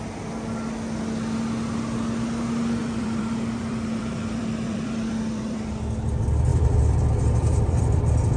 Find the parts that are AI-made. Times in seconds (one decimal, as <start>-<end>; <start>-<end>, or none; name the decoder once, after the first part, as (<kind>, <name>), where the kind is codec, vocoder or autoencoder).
2.8-5.7 (vocoder, BigVGAN v2); 6.5-8.0

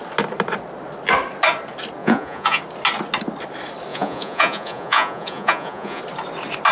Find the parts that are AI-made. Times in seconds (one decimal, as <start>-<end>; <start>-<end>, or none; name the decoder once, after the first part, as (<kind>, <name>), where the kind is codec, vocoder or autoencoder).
2.0-2.6 (vocoder, Vocos); 3.9-6.0

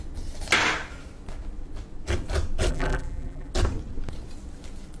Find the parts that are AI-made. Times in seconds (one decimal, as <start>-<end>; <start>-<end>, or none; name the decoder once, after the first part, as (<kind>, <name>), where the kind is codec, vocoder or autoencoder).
2.7-3.5 (vocoder, BigVGAN v2)

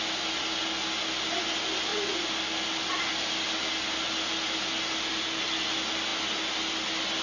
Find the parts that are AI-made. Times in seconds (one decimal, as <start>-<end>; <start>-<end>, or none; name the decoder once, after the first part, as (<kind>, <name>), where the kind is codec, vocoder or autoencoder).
6.1-6.7 (vocoder, BigVGAN v2)

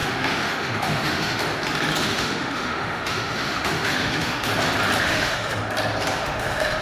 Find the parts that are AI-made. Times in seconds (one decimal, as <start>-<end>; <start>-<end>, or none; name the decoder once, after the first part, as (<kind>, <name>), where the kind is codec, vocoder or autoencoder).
0.0-1.4 (autoencoder, DAC-VAE); 2.0-4.5; 5.0-5.6; 6.2-6.8